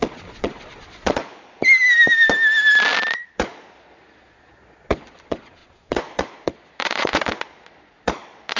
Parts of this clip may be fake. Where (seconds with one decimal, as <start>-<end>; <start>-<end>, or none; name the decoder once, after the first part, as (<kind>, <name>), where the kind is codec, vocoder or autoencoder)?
0.0-1.3 (vocoder, Vocos); 3.1-8.6